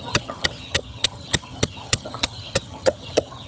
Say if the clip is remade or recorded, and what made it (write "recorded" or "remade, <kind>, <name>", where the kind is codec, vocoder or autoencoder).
remade, vocoder, HiFi-GAN